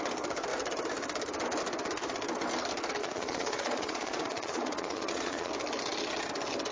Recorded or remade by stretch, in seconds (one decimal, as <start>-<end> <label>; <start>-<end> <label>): 0.0-3.0 recorded; 3.0-5.5 remade; 5.5-6.7 recorded